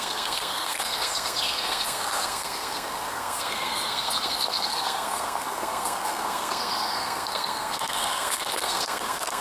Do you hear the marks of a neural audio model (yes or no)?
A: yes